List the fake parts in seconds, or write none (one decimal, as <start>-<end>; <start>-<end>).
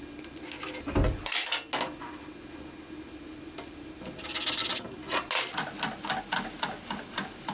none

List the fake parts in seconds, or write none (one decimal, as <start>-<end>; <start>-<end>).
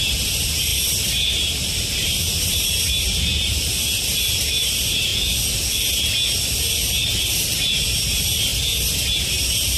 0.0-5.1; 7.2-8.5; 9.1-9.8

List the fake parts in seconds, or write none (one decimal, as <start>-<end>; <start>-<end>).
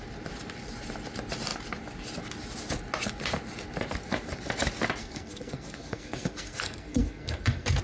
5.0-7.8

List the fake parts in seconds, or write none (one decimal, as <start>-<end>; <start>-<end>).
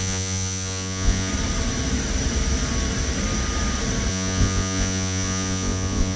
0.0-1.3; 4.1-6.2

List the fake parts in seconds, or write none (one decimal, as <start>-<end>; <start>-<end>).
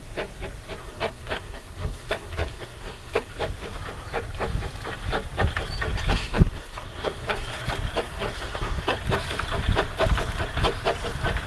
0.8-3.3; 6.1-7.6; 8.0-9.0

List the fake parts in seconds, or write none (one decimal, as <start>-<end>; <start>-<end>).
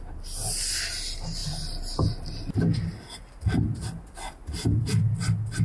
none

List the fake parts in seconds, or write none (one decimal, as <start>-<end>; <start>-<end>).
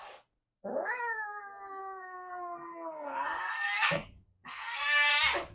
0.7-1.4; 1.8-5.1